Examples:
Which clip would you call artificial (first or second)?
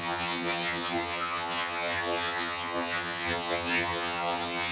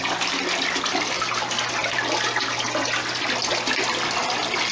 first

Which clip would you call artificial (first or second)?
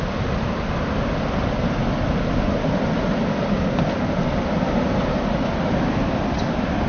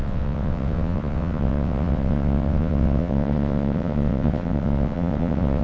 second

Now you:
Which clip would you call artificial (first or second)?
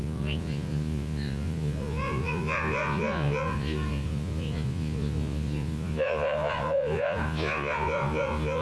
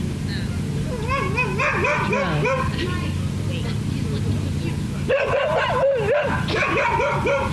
first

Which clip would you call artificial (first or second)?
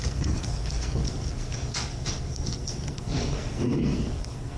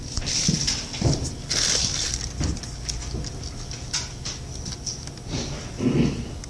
first